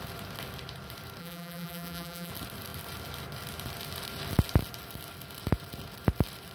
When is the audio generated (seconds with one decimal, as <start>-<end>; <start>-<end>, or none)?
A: 1.2-2.3